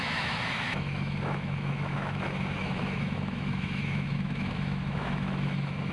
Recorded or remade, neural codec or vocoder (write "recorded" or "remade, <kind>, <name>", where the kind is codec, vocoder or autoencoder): remade, autoencoder, DAC-VAE